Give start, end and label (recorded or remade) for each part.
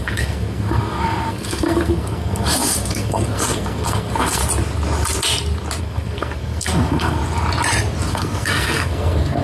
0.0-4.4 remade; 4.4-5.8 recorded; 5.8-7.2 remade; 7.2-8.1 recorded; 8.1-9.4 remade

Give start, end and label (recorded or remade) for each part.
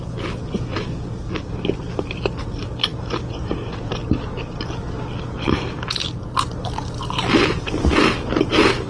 0.0-8.9 recorded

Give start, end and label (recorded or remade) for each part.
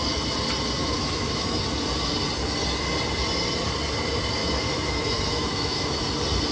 0.0-0.8 recorded; 0.8-1.6 remade; 1.6-4.4 recorded; 4.4-6.0 remade; 6.0-6.5 recorded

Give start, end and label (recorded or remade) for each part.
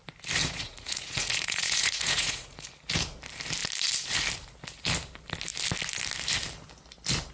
0.0-0.4 recorded; 0.4-2.7 remade; 2.7-7.3 recorded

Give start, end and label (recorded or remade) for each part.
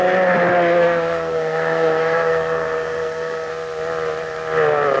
0.0-0.8 recorded; 0.8-3.5 remade; 3.5-5.0 recorded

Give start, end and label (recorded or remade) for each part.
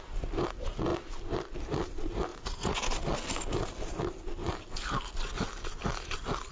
0.0-2.3 recorded; 2.3-2.8 remade; 2.8-6.5 recorded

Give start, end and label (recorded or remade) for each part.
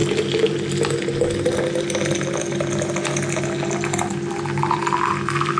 0.0-5.6 recorded